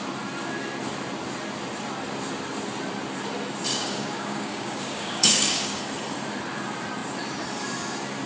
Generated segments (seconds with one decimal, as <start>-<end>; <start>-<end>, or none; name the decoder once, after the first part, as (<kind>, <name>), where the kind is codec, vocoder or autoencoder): 3.7-5.8 (codec, DAC)